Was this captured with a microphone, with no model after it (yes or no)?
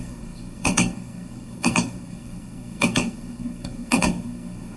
no